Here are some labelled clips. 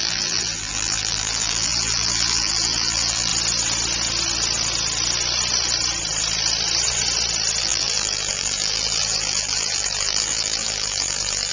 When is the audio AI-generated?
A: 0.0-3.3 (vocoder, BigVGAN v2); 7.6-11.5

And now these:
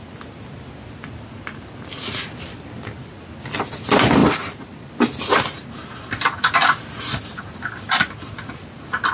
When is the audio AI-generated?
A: none

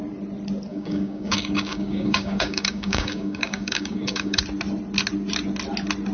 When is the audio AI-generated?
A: 0.7-4.4 (codec, DAC)

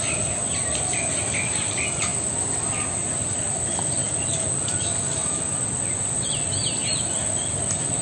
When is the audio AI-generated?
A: none

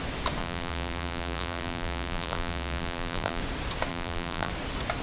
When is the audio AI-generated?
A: 0.4-3.4 (vocoder, BigVGAN v2); 3.9-4.5